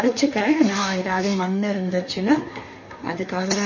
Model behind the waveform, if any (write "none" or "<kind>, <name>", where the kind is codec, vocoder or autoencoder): codec, SNAC